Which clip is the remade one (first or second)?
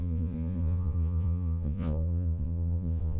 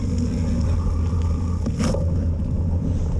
first